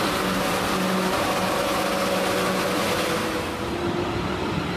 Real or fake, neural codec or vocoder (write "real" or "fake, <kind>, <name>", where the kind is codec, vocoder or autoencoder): real